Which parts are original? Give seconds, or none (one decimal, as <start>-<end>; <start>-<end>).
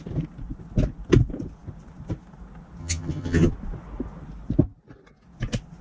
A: 0.0-2.8; 3.5-5.8